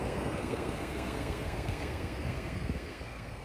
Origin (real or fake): fake